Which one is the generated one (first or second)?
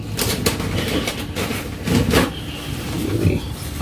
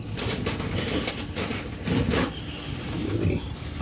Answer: second